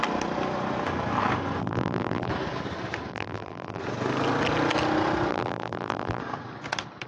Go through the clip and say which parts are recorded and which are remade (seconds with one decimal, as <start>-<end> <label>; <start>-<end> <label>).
0.0-1.6 recorded; 1.6-2.3 remade; 2.3-3.1 recorded; 3.1-3.8 remade; 3.8-5.3 recorded; 5.3-6.2 remade; 6.2-7.1 recorded